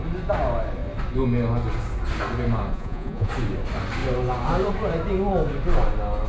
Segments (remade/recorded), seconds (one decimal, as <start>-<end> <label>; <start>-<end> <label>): 0.0-2.7 recorded; 2.7-3.3 remade; 3.3-6.3 recorded